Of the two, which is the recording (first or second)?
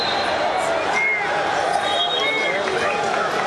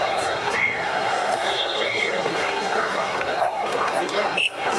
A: first